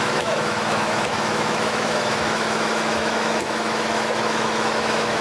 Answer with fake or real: fake